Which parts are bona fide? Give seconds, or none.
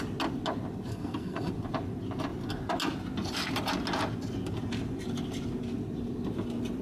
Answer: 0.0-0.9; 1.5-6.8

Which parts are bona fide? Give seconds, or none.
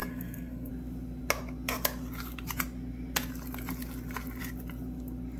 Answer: 0.7-5.4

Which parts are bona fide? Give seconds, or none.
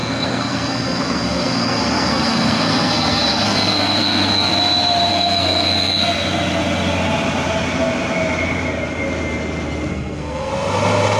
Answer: 4.5-5.1; 6.0-9.9; 10.5-11.2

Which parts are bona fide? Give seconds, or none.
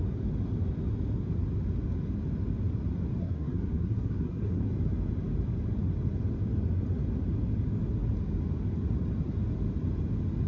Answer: 0.0-3.2; 4.7-10.5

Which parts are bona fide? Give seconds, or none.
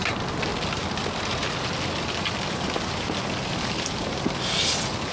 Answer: 0.0-5.1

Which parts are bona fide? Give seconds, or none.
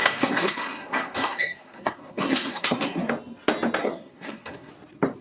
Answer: 3.1-3.8; 4.7-5.2